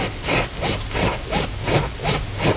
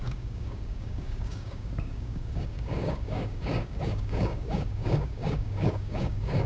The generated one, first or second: second